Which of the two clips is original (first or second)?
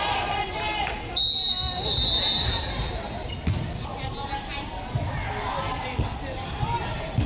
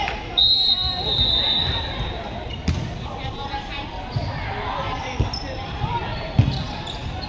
first